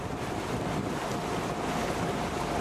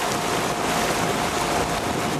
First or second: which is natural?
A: second